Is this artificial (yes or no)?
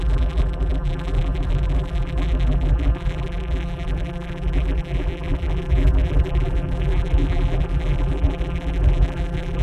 yes